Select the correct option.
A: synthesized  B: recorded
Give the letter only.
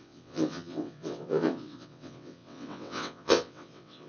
A